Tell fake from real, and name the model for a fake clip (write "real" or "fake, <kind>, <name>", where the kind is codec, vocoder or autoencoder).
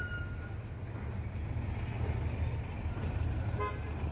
real